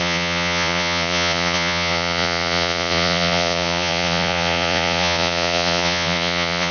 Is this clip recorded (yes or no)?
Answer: no